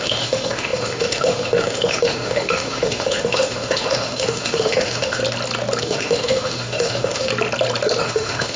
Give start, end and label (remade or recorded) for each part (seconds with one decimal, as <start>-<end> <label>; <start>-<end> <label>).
0.0-5.2 remade; 5.2-5.8 recorded; 5.8-7.3 remade; 7.3-8.0 recorded; 8.0-8.6 remade